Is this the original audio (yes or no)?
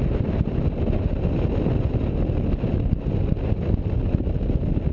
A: yes